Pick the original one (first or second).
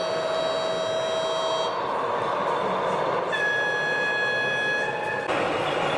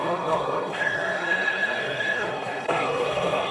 first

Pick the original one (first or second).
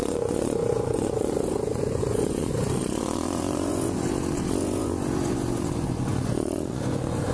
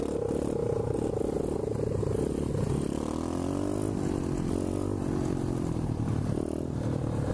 second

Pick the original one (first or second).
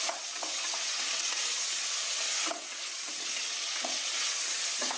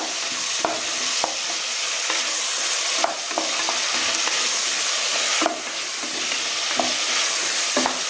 second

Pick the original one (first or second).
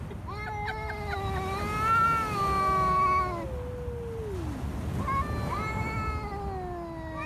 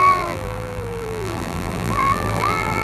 first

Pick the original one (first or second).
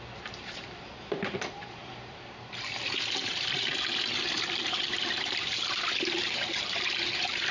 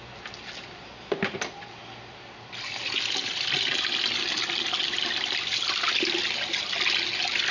second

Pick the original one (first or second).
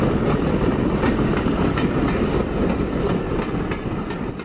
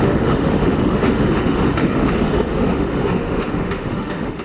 first